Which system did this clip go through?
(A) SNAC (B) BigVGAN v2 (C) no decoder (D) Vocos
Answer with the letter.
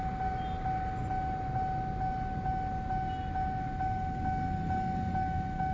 C